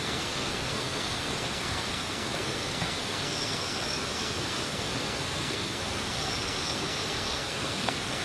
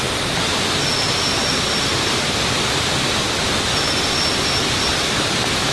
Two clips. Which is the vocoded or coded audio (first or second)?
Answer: first